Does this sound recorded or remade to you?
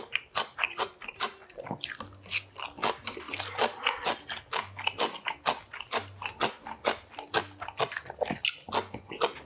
recorded